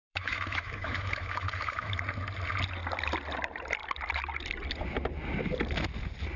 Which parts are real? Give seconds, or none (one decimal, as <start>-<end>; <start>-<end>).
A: 2.0-6.4